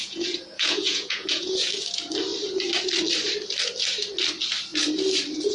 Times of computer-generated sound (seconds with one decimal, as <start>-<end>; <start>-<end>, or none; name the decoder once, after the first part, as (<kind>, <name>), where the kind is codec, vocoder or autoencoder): 0.0-1.7 (vocoder, Vocos)